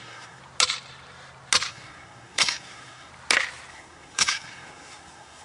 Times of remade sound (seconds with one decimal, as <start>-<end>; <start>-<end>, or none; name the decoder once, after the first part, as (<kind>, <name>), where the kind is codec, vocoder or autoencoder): 0.0-0.4 (codec, SNAC); 1.7-3.1; 3.7-5.4